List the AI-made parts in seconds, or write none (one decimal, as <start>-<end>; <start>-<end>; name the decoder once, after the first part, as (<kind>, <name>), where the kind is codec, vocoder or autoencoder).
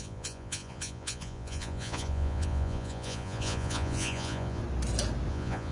0.0-4.6 (vocoder, Vocos); 5.3-5.7